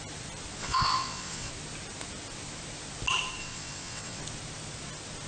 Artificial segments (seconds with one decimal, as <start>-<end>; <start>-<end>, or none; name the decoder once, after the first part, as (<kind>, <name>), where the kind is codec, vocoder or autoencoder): 0.6-1.5 (vocoder, WaveNeXt); 3.4-4.2